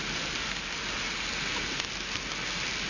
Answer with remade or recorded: recorded